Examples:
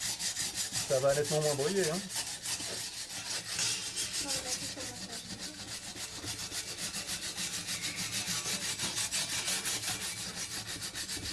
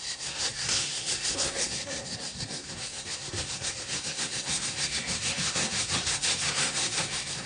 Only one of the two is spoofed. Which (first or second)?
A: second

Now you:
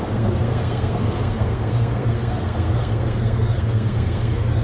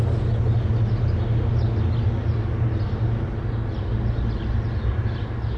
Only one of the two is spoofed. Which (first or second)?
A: first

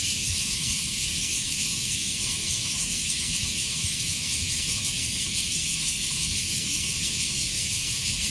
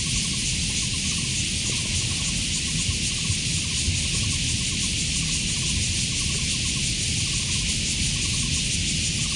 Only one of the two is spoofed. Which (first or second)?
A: first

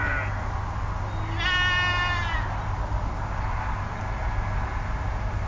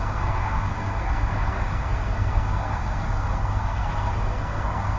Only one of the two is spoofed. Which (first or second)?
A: second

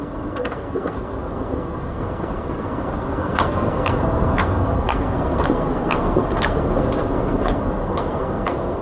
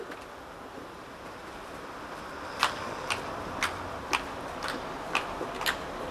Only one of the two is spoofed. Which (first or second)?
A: first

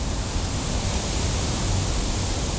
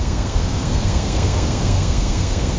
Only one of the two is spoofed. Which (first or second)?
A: second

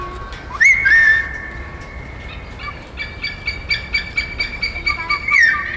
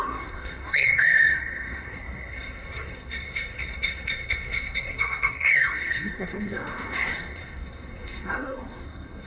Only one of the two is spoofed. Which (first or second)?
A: second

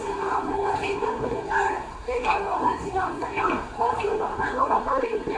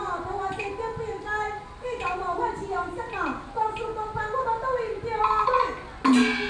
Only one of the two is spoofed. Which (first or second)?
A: first